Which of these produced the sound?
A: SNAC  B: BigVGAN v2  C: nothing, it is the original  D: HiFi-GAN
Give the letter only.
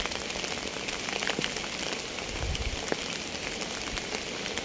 C